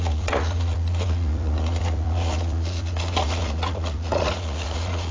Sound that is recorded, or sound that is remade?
remade